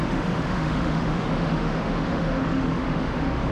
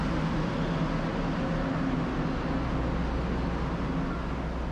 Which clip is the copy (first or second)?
first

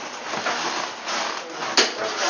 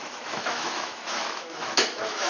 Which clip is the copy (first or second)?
second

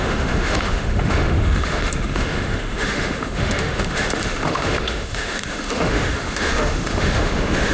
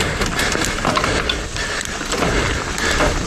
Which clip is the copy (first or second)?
first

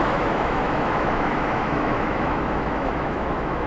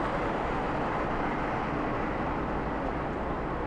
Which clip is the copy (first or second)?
first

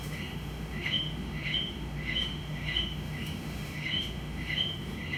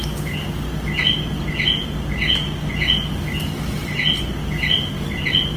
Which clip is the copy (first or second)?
first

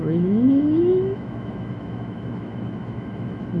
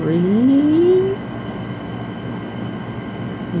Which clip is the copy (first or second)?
first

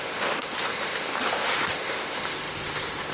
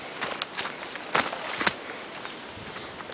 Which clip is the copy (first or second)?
first